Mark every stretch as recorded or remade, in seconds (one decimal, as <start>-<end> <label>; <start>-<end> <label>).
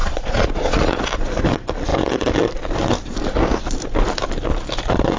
0.0-1.0 remade; 1.0-5.2 recorded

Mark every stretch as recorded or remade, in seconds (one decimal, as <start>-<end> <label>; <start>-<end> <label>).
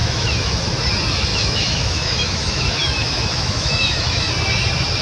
0.0-0.6 remade; 0.6-1.3 recorded; 1.3-4.3 remade; 4.3-5.0 recorded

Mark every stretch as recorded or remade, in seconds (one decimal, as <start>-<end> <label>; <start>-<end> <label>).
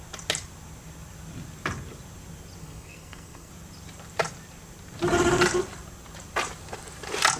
0.0-2.6 recorded; 2.6-3.5 remade; 3.5-7.4 recorded